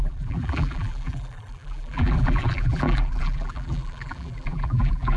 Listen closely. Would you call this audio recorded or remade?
remade